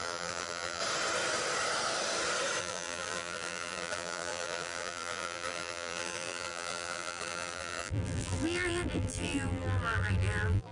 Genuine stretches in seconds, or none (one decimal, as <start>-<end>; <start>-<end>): 0.8-2.6